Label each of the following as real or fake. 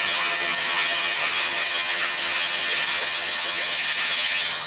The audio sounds fake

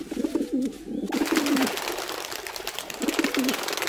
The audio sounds real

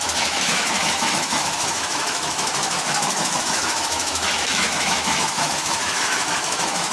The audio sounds fake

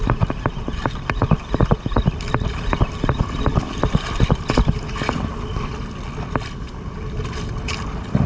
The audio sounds real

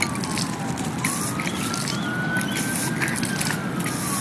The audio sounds real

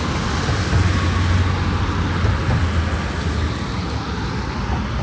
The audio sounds real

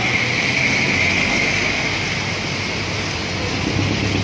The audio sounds real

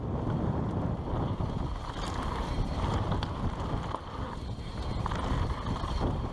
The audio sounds real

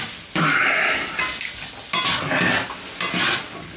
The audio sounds real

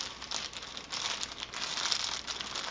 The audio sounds real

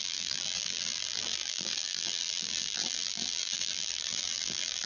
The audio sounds fake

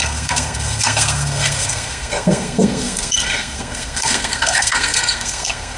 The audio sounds fake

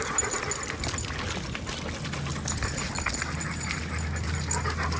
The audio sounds real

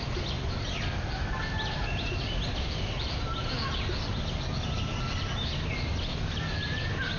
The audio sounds real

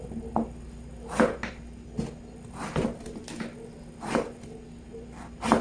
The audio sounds real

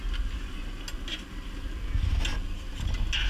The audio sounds real